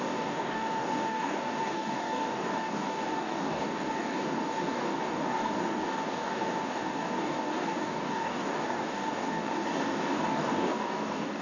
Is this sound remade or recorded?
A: remade